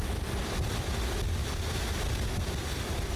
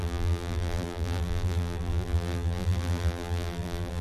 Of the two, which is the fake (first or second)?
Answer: second